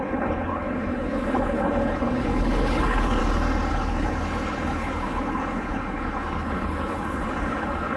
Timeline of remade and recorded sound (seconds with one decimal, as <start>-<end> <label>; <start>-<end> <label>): 0.0-3.2 remade; 3.2-3.7 recorded; 3.7-8.0 remade